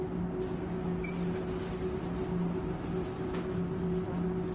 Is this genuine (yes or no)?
yes